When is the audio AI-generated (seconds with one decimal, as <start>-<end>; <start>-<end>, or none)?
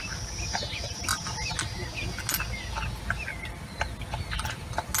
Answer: none